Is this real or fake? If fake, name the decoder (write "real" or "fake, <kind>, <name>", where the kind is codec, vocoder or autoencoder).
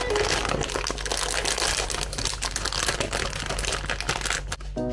real